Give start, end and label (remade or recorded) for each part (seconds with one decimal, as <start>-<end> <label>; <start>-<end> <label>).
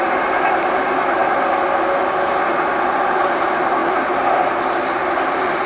0.0-5.7 recorded